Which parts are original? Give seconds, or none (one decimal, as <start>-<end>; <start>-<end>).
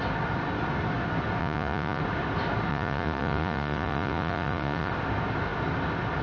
0.0-1.4; 2.0-2.7; 4.9-6.2